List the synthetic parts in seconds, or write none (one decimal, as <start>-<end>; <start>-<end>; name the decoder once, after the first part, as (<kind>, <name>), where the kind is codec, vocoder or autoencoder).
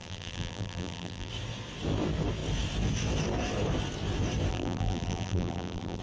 0.0-1.3 (vocoder, BigVGAN v2); 4.5-6.0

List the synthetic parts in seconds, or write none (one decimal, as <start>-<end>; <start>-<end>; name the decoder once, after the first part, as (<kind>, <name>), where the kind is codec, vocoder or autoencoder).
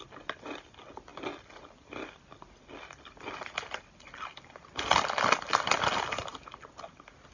none